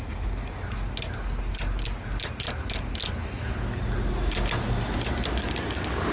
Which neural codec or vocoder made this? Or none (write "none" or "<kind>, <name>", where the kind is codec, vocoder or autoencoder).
none